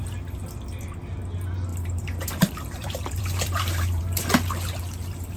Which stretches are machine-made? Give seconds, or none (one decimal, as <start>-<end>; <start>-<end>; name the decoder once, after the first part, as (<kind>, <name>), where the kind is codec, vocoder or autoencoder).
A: 1.7-4.0 (vocoder, BigVGAN v2)